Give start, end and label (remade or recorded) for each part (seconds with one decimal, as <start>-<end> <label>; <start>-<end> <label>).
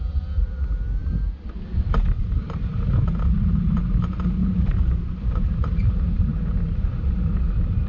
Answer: 0.0-4.4 recorded; 4.4-6.5 remade; 6.5-7.9 recorded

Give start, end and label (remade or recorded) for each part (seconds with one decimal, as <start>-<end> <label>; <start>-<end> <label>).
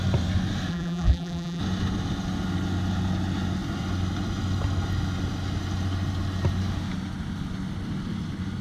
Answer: 0.0-0.7 recorded; 0.7-1.6 remade; 1.6-8.6 recorded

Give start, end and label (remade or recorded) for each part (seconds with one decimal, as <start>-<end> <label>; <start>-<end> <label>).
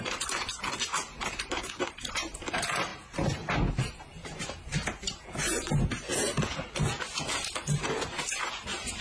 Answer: 0.0-0.5 remade; 0.5-1.1 recorded; 1.1-2.9 remade; 2.9-3.7 recorded; 3.7-6.1 remade; 6.1-7.4 recorded; 7.4-9.0 remade